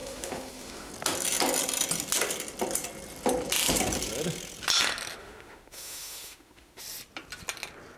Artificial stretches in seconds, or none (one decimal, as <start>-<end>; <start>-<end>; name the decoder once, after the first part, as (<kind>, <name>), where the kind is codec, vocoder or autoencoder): 0.0-0.9 (autoencoder, DAC-VAE); 5.2-6.8